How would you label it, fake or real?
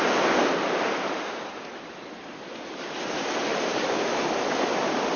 real